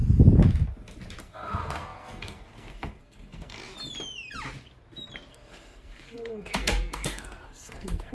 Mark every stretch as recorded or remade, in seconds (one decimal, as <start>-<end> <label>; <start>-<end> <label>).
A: 0.0-1.2 recorded; 1.2-3.6 remade; 3.6-5.3 recorded; 5.3-8.1 remade